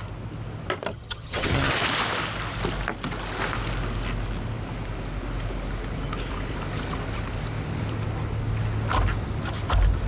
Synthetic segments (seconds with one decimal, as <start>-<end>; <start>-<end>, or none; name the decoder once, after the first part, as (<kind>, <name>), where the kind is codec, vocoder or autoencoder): 0.9-1.7 (vocoder, HiFi-GAN)